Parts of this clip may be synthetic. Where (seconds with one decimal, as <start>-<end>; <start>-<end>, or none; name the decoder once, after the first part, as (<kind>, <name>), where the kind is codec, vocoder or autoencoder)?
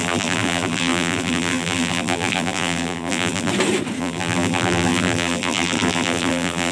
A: 0.0-3.5 (vocoder, BigVGAN v2); 4.0-6.7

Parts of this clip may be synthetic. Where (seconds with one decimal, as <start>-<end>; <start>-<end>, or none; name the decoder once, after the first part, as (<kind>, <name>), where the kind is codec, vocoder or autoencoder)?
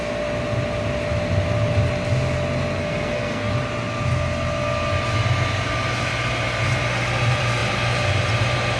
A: 2.8-3.5 (codec, SNAC)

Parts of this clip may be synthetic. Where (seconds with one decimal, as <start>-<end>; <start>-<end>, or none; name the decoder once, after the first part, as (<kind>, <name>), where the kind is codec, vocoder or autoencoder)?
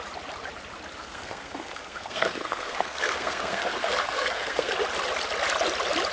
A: 1.0-4.7 (codec, SNAC)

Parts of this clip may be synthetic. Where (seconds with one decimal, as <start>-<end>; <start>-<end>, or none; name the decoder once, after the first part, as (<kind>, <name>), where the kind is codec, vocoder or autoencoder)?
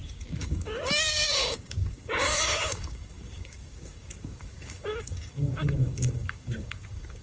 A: 0.0-7.2 (codec, DAC)